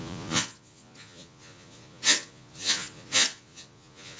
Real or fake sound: fake